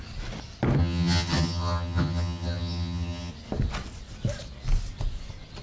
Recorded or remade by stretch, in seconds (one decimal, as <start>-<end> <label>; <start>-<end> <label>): 0.0-0.8 recorded; 0.8-3.3 remade; 3.3-5.6 recorded